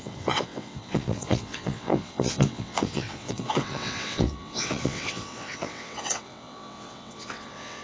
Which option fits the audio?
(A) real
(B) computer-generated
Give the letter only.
B